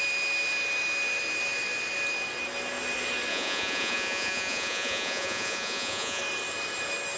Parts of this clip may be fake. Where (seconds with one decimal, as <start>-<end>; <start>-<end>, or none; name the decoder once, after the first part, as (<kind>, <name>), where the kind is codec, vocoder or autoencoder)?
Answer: 3.3-6.2 (vocoder, Vocos)